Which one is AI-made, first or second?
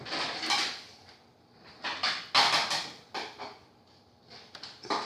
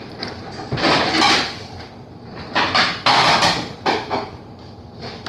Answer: second